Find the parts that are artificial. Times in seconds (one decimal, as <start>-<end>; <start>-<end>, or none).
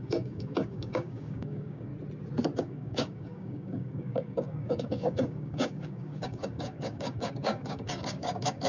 0.0-1.9; 2.6-8.7